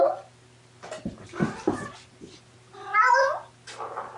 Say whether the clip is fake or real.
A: real